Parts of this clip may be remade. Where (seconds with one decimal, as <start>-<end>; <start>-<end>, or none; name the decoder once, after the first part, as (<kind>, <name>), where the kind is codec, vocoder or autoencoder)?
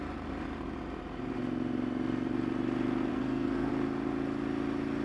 3.1-3.7 (codec, SNAC)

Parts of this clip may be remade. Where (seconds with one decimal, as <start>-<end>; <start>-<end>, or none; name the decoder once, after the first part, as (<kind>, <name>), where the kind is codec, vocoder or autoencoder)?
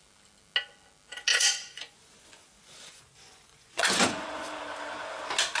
1.3-4.6 (vocoder, Vocos)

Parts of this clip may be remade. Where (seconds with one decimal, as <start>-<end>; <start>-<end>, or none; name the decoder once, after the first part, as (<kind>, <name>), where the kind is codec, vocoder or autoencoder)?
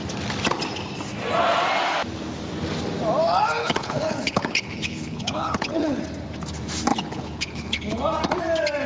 3.6-6.0 (codec, HILCodec); 6.9-8.0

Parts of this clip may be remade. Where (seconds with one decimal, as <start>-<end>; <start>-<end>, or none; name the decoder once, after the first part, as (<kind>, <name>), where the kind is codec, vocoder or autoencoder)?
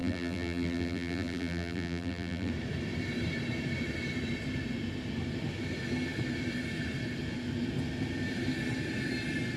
0.0-2.5 (vocoder, BigVGAN v2)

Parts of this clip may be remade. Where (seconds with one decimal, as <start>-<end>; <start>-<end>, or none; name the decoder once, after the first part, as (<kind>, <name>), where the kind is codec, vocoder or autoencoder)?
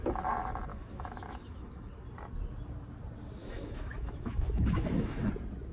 0.7-1.9 (autoencoder, DAC-VAE); 3.4-5.3